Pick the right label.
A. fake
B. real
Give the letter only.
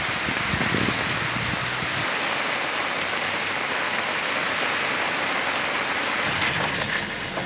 B